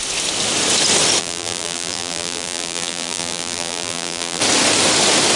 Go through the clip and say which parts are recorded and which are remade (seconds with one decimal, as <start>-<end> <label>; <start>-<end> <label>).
0.0-1.2 recorded; 1.2-4.4 remade; 4.4-5.4 recorded